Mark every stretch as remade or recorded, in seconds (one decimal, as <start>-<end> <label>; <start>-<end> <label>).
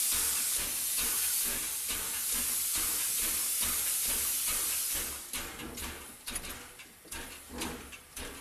0.0-8.4 recorded